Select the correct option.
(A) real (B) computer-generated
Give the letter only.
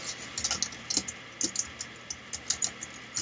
A